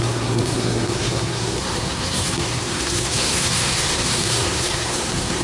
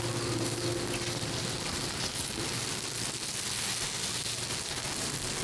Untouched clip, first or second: second